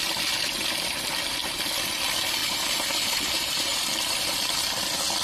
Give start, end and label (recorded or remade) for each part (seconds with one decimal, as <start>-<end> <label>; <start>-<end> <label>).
0.0-2.4 recorded; 2.4-3.9 remade; 3.9-5.2 recorded